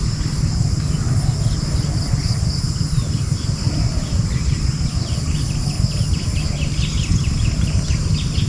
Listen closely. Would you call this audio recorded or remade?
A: recorded